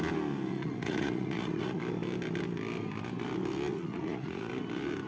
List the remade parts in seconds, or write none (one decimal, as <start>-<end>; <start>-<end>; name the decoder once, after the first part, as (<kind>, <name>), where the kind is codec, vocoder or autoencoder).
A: 0.5-1.8 (vocoder, Vocos); 3.7-4.5